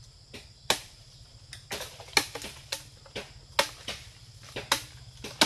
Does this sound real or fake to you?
real